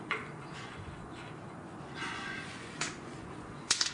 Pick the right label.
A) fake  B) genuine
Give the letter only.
A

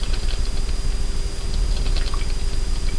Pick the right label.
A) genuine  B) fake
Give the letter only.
A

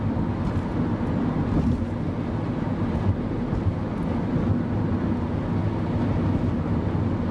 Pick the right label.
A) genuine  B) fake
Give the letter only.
A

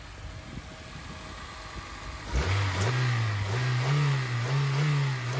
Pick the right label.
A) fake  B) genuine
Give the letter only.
B